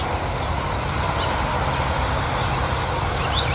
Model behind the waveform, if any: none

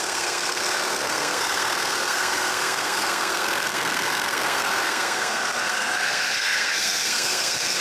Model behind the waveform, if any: codec, SNAC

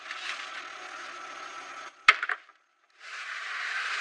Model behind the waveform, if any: none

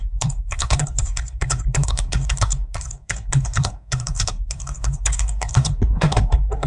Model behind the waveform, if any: codec, SNAC